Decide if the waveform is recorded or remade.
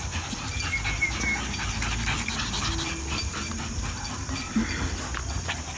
recorded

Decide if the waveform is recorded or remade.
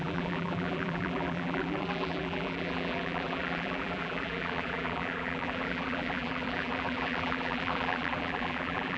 remade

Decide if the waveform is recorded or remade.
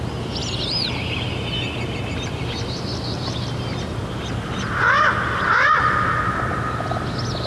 recorded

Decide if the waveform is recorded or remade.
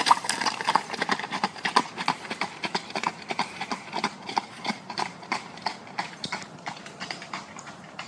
remade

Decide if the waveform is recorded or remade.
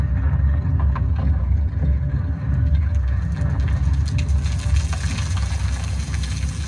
recorded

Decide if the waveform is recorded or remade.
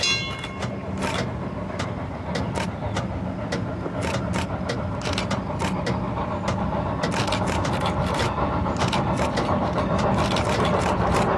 recorded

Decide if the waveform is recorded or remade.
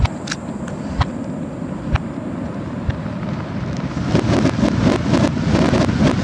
recorded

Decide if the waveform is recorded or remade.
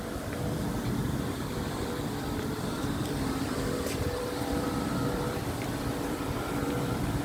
remade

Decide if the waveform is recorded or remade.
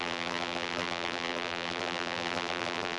remade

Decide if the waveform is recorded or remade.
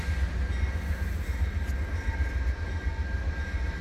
recorded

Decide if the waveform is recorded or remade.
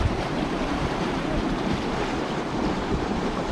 remade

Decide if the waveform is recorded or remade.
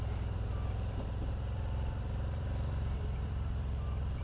remade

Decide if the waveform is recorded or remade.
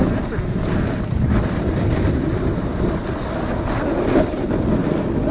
recorded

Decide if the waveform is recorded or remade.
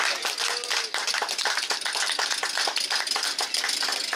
recorded